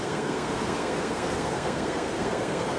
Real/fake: fake